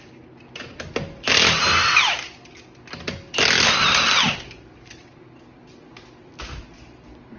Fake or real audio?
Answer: real